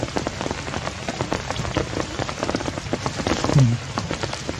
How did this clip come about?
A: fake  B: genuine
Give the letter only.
B